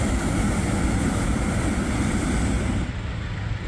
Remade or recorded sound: recorded